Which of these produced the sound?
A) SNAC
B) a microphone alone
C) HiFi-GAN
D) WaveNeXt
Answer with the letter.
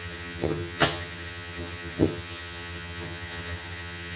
C